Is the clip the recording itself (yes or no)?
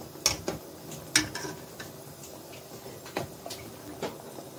yes